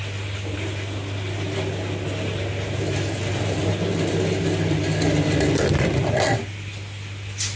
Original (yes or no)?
yes